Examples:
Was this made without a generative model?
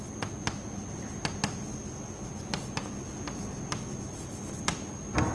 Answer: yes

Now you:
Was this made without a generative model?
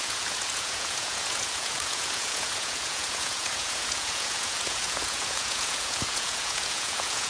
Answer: no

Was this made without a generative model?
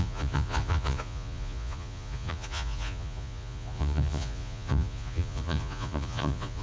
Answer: no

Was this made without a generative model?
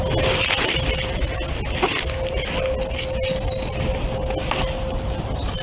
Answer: yes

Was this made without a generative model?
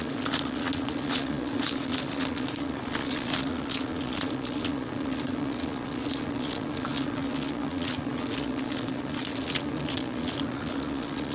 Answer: no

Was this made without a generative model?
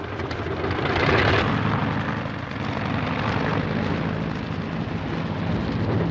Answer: yes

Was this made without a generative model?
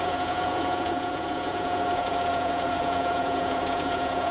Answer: no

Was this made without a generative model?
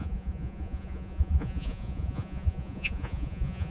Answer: no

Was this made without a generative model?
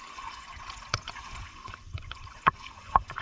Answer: no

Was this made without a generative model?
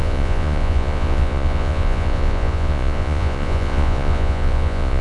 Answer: no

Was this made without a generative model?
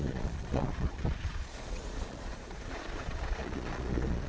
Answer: no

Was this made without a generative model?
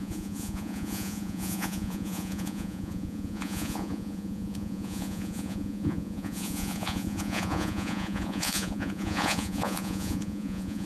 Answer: no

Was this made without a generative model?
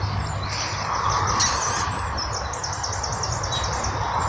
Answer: yes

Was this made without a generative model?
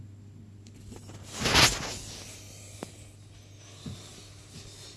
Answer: yes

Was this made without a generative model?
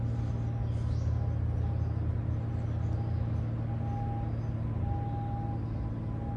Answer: yes